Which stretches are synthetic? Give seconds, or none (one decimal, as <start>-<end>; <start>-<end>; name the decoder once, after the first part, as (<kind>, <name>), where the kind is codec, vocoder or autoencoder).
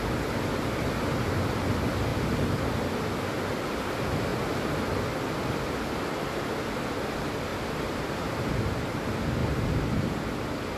2.1-3.0 (vocoder, BigVGAN v2); 7.5-8.4; 9.4-10.3